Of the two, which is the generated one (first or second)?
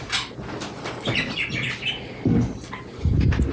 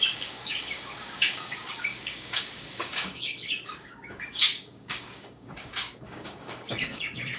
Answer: second